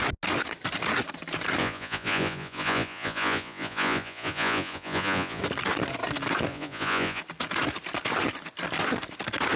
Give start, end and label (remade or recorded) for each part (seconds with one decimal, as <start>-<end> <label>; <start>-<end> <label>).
0.0-1.6 recorded; 1.6-5.4 remade; 5.4-6.5 recorded; 6.5-7.2 remade; 7.2-9.6 recorded